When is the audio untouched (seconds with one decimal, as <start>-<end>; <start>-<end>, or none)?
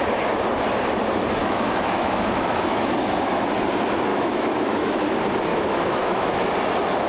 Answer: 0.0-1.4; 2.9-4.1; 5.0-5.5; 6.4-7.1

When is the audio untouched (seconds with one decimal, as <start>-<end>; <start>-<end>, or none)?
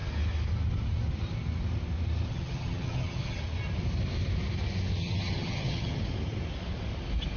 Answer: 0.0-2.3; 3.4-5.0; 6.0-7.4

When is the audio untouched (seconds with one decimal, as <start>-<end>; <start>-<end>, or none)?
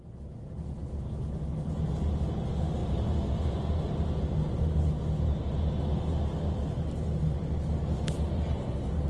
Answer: 0.0-9.1